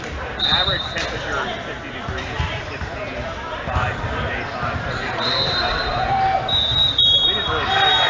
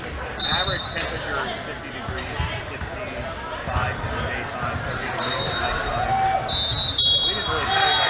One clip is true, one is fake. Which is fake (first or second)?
first